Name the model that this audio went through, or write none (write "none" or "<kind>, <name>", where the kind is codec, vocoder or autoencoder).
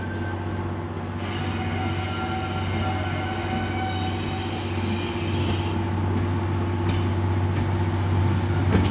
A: none